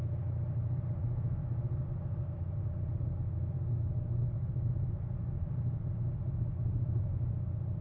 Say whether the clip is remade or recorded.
recorded